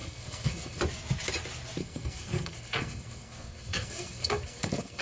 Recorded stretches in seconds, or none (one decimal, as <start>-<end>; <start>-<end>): 0.8-1.8